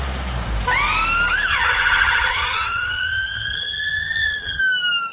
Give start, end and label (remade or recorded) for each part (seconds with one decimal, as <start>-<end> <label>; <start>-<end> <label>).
0.0-1.5 recorded; 1.5-4.6 remade; 4.6-5.1 recorded